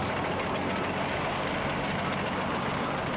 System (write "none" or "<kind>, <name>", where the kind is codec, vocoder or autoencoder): none